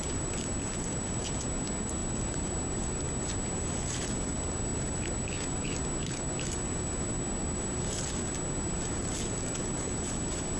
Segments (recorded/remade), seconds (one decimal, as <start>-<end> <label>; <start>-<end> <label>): 0.0-10.6 recorded